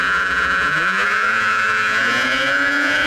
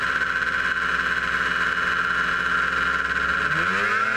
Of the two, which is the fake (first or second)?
first